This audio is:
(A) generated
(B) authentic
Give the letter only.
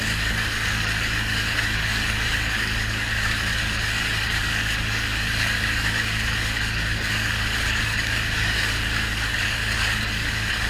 A